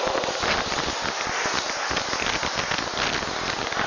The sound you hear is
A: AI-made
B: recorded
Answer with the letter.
B